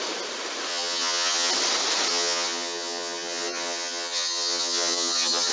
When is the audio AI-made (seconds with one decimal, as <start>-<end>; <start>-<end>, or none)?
0.7-1.5; 2.1-5.5